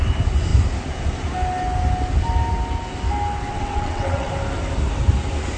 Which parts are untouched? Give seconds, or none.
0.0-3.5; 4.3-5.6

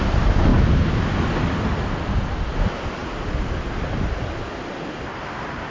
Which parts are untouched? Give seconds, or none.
0.0-5.7

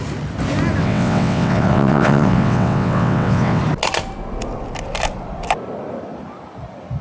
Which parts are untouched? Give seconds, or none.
0.0-0.8; 3.6-7.0

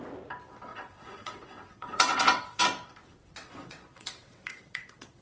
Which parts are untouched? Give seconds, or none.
0.0-0.7; 2.6-3.1